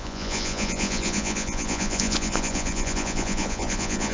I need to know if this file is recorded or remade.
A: remade